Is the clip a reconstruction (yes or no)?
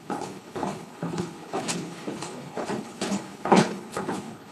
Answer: yes